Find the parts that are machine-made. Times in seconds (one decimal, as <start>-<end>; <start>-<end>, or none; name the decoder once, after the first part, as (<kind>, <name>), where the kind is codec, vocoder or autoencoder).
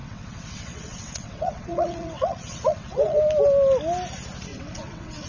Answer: 0.0-3.2 (vocoder, WaveNeXt); 4.5-5.3